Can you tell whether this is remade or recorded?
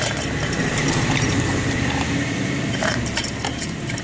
remade